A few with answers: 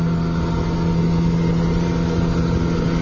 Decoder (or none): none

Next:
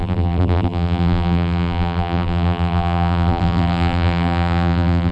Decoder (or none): vocoder, BigVGAN v2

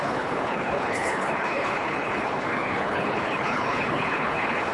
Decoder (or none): codec, HILCodec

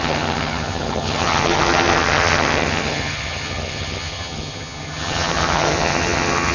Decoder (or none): vocoder, HiFi-GAN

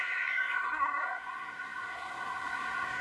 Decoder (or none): codec, SNAC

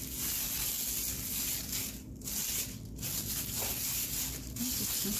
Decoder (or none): none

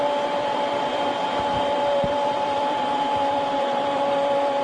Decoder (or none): vocoder, BigVGAN v2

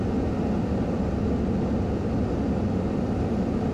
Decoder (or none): none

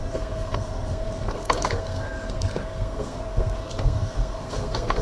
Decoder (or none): codec, SNAC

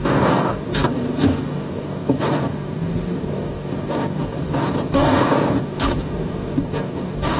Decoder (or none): codec, DAC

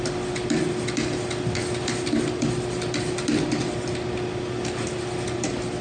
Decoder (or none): none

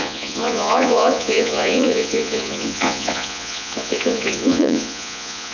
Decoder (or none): vocoder, Vocos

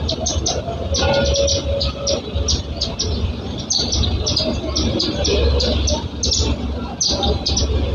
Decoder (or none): none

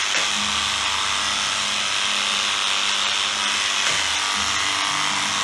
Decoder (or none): none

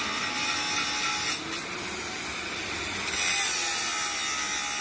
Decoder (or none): none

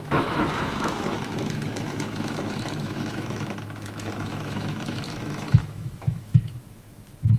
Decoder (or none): autoencoder, DAC-VAE